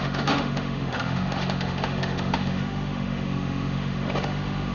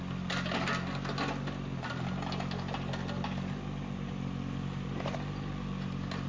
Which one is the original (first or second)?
second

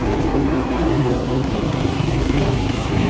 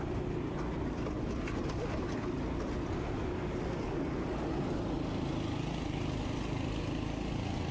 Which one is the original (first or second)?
second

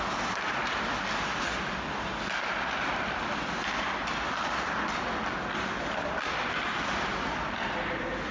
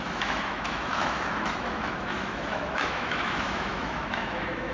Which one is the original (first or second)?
first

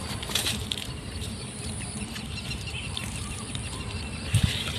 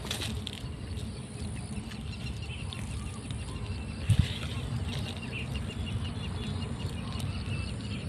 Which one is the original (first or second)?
second